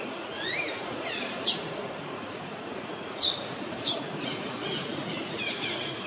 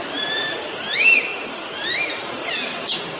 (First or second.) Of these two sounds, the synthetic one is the first